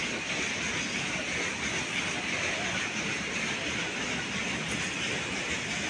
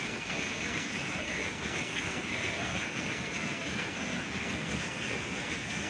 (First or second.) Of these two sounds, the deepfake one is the second